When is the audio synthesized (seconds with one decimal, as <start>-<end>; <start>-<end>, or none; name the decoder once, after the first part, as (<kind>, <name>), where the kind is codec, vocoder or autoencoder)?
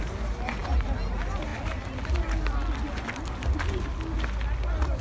none